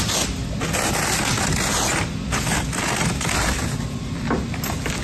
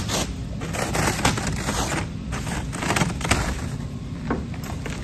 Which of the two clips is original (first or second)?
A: first